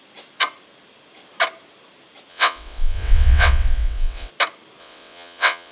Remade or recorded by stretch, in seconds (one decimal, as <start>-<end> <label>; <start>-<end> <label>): 0.0-2.3 recorded; 2.3-4.3 remade; 4.3-4.8 recorded; 4.8-5.7 remade